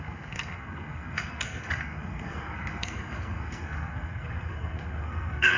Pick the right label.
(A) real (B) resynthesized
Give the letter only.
B